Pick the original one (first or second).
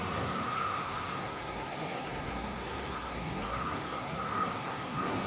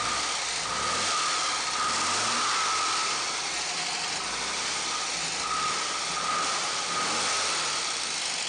second